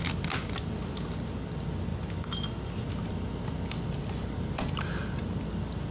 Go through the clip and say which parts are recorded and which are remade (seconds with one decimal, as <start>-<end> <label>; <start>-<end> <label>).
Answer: 0.0-5.9 recorded